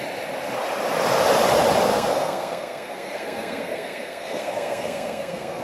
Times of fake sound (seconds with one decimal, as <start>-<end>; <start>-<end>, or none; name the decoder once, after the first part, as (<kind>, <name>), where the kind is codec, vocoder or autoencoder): 1.9-5.6 (codec, SNAC)